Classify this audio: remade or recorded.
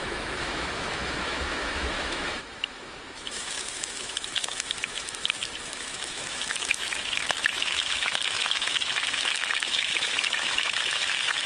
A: remade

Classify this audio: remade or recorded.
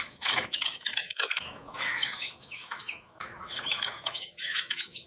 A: remade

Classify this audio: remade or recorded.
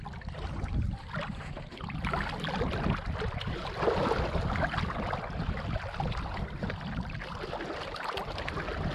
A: recorded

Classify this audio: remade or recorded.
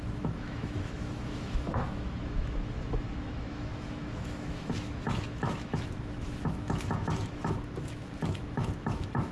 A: remade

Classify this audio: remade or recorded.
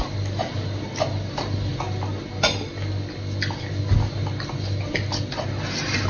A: recorded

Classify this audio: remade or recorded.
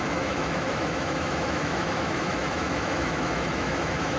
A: remade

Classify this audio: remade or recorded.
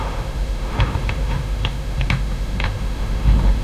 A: remade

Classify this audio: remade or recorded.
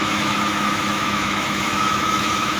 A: remade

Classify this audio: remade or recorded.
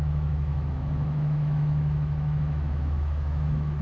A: remade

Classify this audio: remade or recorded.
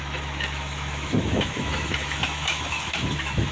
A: remade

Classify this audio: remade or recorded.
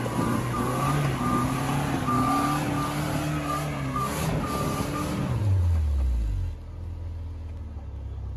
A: recorded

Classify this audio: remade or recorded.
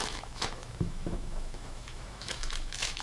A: remade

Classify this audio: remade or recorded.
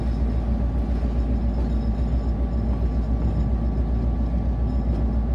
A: recorded